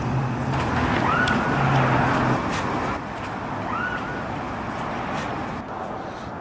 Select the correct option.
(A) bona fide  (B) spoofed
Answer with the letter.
A